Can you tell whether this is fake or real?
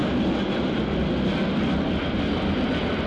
real